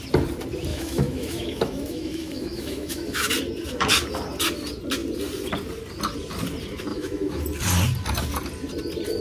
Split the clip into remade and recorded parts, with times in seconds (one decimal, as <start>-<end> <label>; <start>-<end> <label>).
0.0-0.7 recorded; 0.7-3.3 remade; 3.3-6.9 recorded; 6.9-7.4 remade; 7.4-9.2 recorded